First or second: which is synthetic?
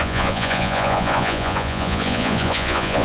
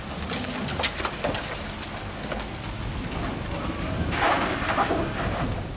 first